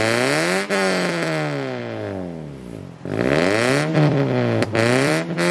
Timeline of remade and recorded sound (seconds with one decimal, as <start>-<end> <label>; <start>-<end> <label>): 0.0-3.9 recorded; 3.9-5.1 remade; 5.1-5.5 recorded